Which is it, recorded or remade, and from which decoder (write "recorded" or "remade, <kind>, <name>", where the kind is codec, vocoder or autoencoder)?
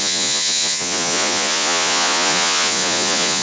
remade, vocoder, Vocos